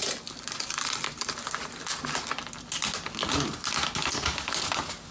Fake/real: real